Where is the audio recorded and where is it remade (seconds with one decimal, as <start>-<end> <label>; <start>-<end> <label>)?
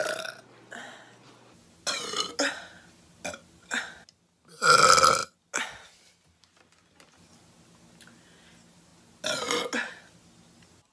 0.0-10.9 recorded